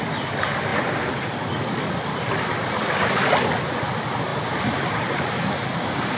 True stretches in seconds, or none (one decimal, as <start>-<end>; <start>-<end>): 0.0-6.2